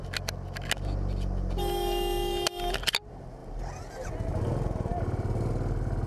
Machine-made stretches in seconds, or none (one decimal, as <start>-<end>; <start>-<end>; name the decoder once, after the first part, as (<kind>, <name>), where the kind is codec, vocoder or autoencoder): none